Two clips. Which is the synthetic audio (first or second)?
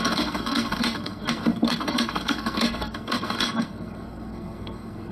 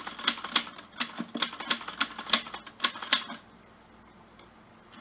first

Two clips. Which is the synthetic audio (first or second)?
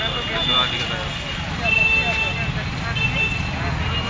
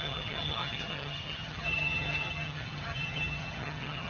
second